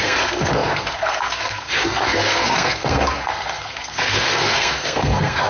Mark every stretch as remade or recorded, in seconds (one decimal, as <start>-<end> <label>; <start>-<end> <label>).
0.0-5.5 remade